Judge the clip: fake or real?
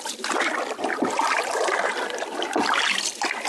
real